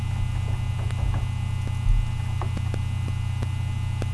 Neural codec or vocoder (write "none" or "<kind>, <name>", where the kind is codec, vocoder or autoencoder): none